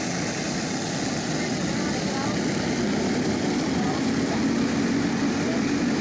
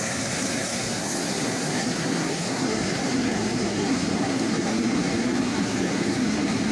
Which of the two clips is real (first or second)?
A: first